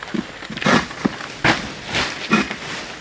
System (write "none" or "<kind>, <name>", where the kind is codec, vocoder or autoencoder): none